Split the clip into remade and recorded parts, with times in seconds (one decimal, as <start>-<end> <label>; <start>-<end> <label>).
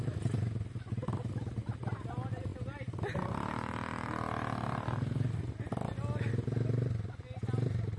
0.0-8.0 recorded